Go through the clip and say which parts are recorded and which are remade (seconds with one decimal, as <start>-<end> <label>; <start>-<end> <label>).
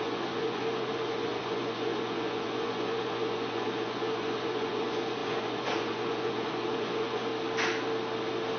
0.0-7.3 remade; 7.3-8.6 recorded